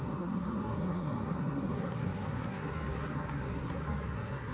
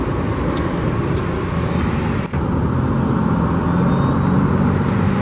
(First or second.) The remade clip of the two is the first